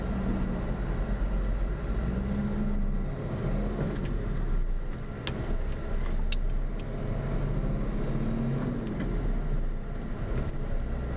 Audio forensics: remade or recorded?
recorded